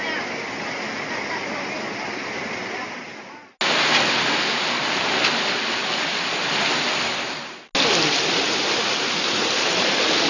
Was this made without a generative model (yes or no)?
yes